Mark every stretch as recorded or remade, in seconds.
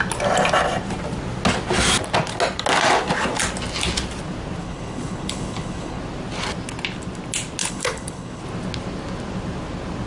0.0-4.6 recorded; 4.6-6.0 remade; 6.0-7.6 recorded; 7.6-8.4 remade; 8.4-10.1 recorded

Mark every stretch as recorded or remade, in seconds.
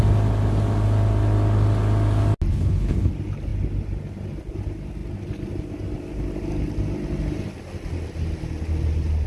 0.0-2.5 recorded; 2.5-3.1 remade; 3.1-9.3 recorded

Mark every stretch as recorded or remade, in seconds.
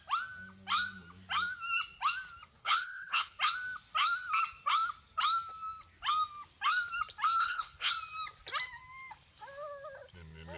0.0-2.6 recorded; 2.6-3.4 remade; 3.4-7.4 recorded; 7.4-7.9 remade; 7.9-10.6 recorded